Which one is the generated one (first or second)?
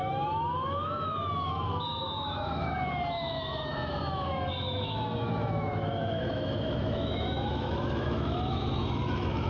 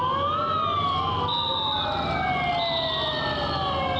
first